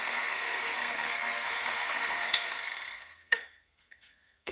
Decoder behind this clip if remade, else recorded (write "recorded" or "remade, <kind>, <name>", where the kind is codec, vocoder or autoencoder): remade, codec, SNAC